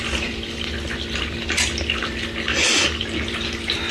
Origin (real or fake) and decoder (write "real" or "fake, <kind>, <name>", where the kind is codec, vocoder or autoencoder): real